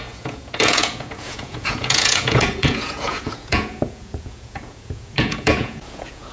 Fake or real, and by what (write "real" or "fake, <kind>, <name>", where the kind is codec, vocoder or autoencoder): fake, vocoder, Vocos